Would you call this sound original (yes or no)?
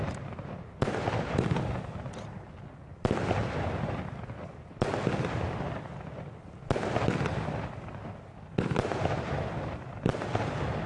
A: yes